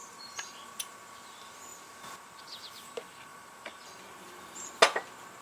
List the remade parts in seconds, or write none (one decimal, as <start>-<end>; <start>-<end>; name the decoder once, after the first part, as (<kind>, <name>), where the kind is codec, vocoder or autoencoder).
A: 0.0-0.6 (vocoder, BigVGAN v2); 3.3-4.7